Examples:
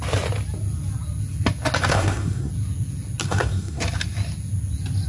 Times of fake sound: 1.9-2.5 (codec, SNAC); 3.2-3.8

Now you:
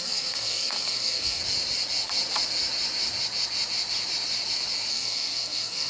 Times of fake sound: 0.0-1.4 (codec, SNAC); 4.9-5.9